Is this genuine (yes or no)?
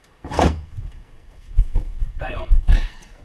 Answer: no